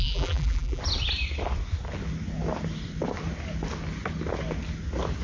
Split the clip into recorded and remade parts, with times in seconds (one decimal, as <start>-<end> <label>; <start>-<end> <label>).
0.0-0.8 remade; 0.8-5.2 recorded